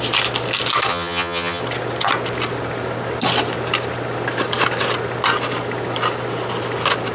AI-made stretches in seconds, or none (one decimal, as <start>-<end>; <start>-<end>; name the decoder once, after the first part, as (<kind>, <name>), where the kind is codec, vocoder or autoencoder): 0.9-1.6 (vocoder, HiFi-GAN)